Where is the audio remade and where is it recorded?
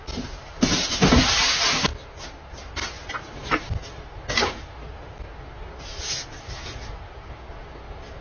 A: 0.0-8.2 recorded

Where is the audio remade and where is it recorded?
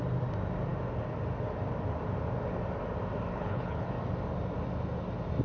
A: 0.0-3.3 recorded; 3.3-3.9 remade; 3.9-5.4 recorded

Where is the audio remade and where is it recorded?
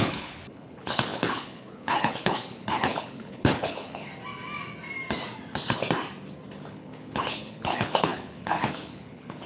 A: 0.0-4.1 remade; 4.1-6.7 recorded; 6.7-9.5 remade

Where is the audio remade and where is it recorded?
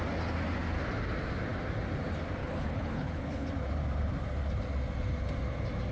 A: 0.0-2.4 recorded; 2.4-3.5 remade; 3.5-5.9 recorded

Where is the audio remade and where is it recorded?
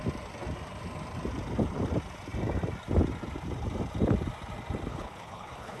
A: 0.0-4.9 recorded; 4.9-5.8 remade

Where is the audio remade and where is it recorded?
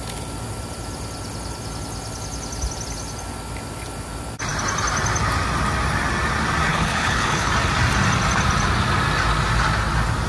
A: 0.0-6.7 recorded; 6.7-7.5 remade; 7.5-10.3 recorded